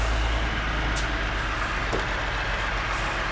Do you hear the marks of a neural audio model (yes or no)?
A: no